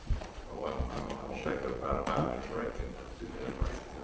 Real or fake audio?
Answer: fake